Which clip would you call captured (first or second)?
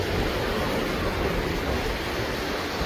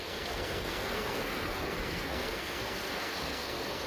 first